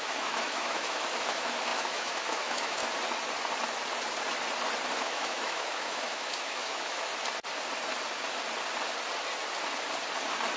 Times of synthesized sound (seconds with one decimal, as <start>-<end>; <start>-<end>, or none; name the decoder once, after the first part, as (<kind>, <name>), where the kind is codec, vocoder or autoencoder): 0.0-2.8 (autoencoder, DAC-VAE); 5.0-7.1